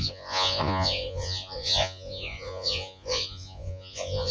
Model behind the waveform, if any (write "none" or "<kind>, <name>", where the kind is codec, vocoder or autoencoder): vocoder, Vocos